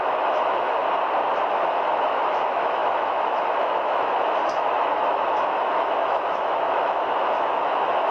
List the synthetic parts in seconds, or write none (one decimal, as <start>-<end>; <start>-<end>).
0.0-0.8; 1.5-8.1